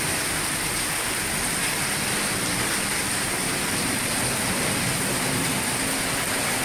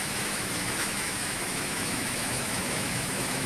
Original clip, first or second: first